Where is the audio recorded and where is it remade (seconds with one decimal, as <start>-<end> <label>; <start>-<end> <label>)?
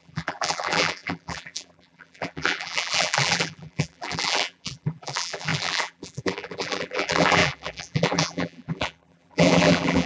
0.0-10.1 remade